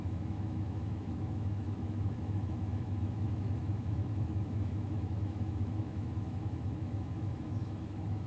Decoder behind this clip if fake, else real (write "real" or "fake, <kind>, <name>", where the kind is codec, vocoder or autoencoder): fake, autoencoder, DAC-VAE